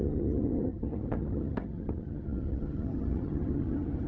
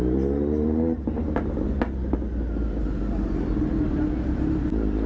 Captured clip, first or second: second